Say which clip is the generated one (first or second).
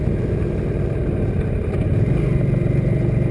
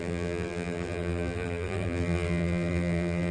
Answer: second